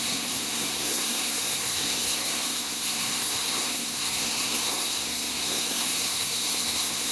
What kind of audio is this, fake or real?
fake